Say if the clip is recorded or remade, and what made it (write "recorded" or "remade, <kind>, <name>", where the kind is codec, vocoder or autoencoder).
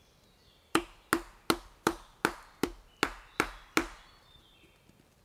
recorded